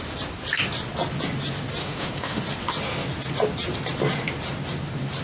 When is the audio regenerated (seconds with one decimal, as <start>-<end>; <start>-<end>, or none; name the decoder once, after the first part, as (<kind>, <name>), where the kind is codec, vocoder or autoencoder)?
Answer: 1.8-2.4 (autoencoder, DAC-VAE)